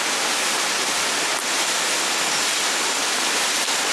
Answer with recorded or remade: recorded